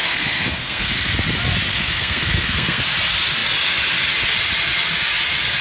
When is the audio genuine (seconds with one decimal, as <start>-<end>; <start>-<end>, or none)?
1.1-1.7; 2.8-5.6